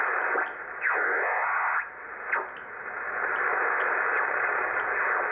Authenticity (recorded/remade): recorded